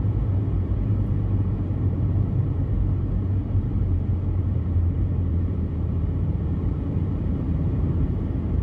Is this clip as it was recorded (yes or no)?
no